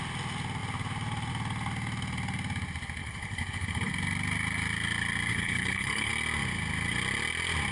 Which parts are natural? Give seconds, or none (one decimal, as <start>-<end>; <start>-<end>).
0.0-3.0; 3.9-5.3; 6.1-7.7